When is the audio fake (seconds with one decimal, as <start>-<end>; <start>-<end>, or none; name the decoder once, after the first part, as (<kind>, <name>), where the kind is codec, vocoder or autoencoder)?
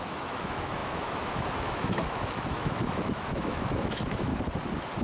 0.0-4.3 (autoencoder, DAC-VAE)